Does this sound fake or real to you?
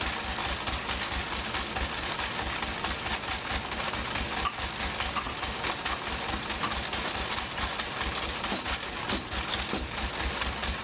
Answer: real